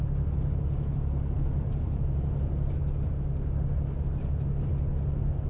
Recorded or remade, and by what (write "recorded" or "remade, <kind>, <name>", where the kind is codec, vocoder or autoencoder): recorded